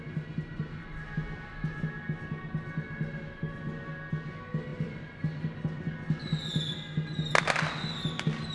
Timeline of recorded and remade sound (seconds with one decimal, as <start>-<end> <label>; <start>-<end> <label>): 0.0-4.7 recorded; 4.7-5.4 remade; 5.4-8.5 recorded